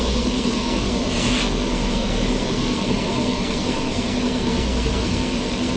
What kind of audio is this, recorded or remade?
remade